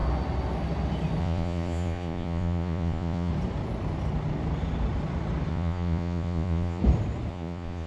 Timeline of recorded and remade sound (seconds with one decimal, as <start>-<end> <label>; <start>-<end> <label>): 0.0-1.2 recorded; 1.2-3.3 remade; 3.3-5.5 recorded; 5.5-6.8 remade; 6.8-7.3 recorded; 7.3-7.9 remade

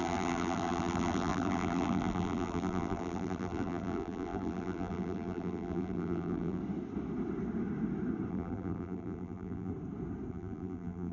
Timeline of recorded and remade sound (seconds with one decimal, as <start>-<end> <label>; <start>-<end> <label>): 0.0-6.6 remade; 6.6-8.3 recorded; 8.3-9.7 remade; 9.7-10.3 recorded; 10.3-11.1 remade

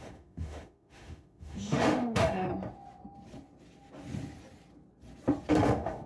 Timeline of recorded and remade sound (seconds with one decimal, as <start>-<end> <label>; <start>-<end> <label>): 0.0-2.5 remade; 2.5-5.5 recorded; 5.5-6.1 remade

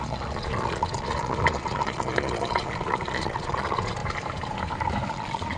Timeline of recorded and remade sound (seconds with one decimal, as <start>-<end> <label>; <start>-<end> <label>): 0.0-4.0 remade; 4.0-5.1 recorded; 5.1-5.6 remade

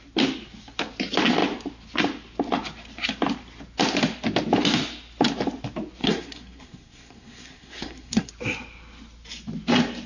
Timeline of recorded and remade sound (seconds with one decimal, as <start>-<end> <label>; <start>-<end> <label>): 0.0-6.0 recorded; 6.0-8.3 remade; 8.3-10.1 recorded

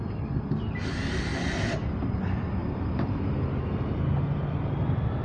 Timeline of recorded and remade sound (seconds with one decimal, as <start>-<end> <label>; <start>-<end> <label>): 0.0-2.6 recorded; 2.6-4.1 remade; 4.1-5.2 recorded

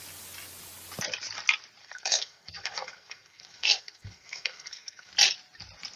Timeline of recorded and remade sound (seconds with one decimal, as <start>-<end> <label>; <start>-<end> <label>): 0.0-1.8 recorded; 1.8-5.1 remade; 5.1-6.0 recorded